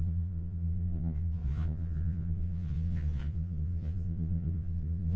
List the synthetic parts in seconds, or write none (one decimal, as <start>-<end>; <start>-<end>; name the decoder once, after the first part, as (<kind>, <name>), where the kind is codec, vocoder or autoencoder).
0.0-5.2 (vocoder, Vocos)